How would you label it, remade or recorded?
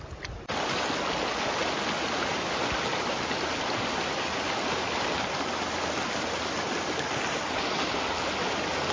recorded